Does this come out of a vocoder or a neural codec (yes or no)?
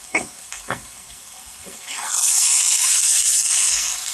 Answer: yes